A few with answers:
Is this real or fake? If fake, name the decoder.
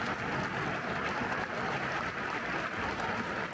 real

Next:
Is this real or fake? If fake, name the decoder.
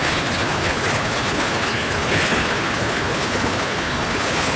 fake, codec, HILCodec